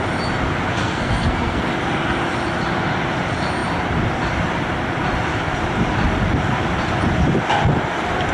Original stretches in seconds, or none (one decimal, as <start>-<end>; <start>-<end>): 0.0-0.7; 1.7-8.3